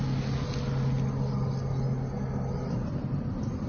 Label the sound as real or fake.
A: real